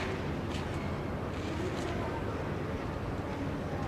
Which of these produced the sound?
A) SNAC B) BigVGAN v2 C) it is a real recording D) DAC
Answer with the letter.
C